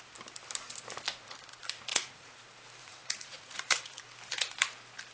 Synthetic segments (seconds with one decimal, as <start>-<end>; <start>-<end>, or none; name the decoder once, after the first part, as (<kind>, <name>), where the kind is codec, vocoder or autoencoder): 1.9-2.4 (vocoder, Vocos); 2.8-4.0